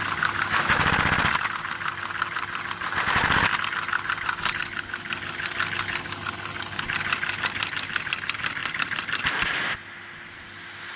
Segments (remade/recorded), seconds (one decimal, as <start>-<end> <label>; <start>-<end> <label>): 0.0-11.0 recorded